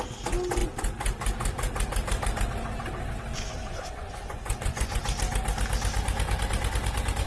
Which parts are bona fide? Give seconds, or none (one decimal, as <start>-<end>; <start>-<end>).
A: 0.0-3.6; 5.0-7.3